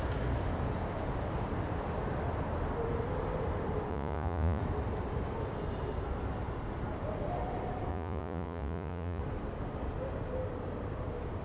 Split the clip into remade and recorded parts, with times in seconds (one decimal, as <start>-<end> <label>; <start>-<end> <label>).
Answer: 0.0-3.9 recorded; 3.9-4.6 remade; 4.6-7.9 recorded; 7.9-9.2 remade; 9.2-11.4 recorded